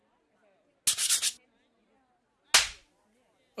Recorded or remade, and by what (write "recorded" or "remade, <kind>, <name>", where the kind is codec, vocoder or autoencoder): recorded